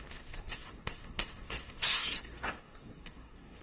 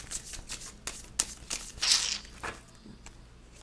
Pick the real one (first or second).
second